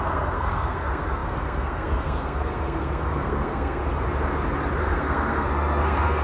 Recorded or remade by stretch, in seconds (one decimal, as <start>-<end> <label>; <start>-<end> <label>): 0.0-3.8 remade; 3.8-4.8 recorded; 4.8-6.2 remade